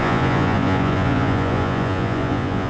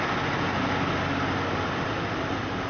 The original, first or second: second